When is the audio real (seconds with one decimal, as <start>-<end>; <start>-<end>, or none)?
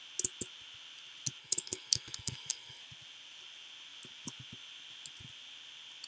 0.0-1.4; 2.8-6.1